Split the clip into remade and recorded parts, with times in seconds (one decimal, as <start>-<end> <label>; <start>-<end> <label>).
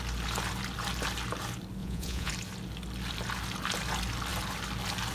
0.0-1.8 recorded; 1.8-2.3 remade; 2.3-5.1 recorded